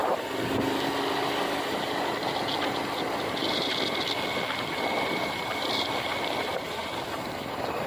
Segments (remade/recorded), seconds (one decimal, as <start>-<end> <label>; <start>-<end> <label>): 0.0-3.4 recorded; 3.4-6.6 remade; 6.6-7.9 recorded